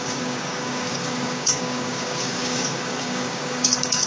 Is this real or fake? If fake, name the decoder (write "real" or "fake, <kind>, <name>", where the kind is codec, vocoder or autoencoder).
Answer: fake, codec, DAC